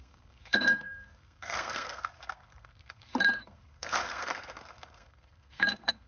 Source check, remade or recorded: remade